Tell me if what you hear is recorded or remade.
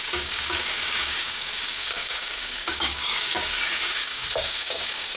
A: remade